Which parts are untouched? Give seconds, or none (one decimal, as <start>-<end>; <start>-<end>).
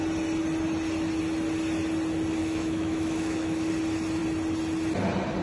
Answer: 0.0-2.4; 3.7-5.4